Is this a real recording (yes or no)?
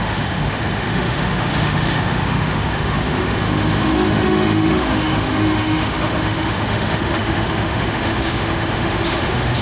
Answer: no